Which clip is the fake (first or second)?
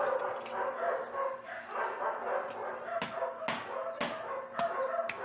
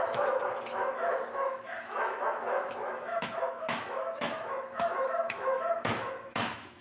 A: second